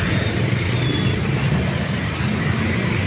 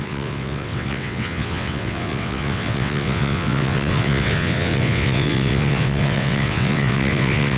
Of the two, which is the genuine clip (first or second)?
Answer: first